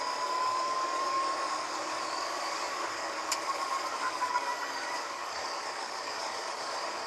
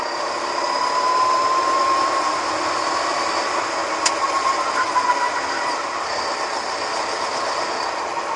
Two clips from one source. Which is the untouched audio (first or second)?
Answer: second